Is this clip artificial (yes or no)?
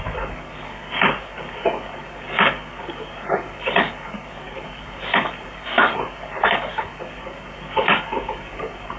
yes